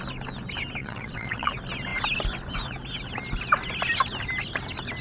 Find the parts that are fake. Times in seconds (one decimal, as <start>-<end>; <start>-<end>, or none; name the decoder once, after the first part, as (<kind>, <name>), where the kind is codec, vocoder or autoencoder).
0.8-1.5 (vocoder, WaveNeXt)